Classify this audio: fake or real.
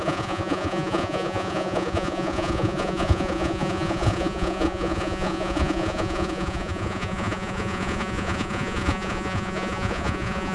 fake